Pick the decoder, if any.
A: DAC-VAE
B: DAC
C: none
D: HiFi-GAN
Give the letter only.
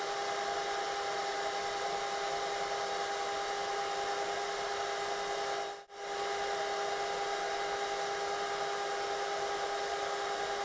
C